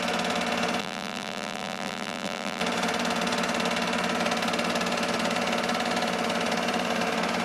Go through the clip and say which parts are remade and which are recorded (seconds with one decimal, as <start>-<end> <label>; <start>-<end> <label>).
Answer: 0.0-0.8 recorded; 0.8-2.6 remade; 2.6-7.4 recorded